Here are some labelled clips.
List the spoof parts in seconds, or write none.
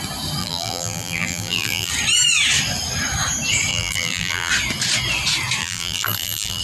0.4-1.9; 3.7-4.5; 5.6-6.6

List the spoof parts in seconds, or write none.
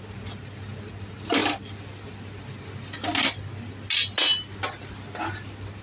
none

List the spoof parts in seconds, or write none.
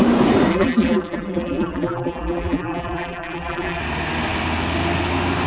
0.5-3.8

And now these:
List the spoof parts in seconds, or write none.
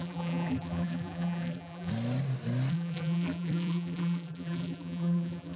0.0-1.9; 2.7-5.6